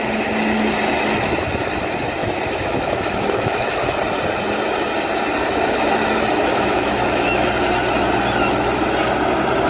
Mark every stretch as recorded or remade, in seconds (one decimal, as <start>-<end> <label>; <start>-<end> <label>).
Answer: 0.0-2.2 recorded; 2.2-4.0 remade; 4.0-6.0 recorded; 6.0-7.5 remade; 7.5-9.7 recorded